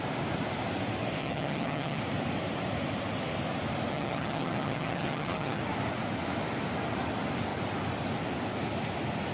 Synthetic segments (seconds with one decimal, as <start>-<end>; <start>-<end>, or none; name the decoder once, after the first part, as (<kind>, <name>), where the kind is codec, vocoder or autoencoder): 1.2-2.0 (vocoder, HiFi-GAN); 3.9-5.6